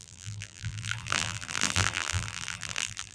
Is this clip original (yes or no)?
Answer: no